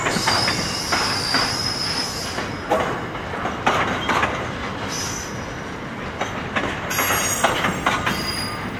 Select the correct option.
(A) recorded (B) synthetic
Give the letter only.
A